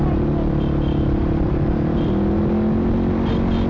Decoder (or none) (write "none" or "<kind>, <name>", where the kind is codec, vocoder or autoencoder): none